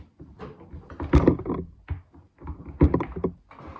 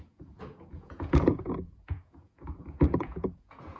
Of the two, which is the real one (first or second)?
first